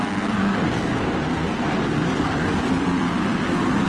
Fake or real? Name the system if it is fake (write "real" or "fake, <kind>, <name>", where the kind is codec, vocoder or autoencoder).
real